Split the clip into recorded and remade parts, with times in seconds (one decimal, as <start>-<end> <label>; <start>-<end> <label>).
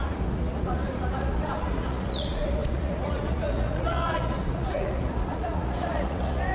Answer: 0.0-6.5 remade